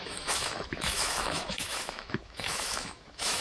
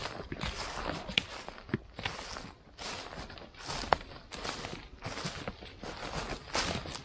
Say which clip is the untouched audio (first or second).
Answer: second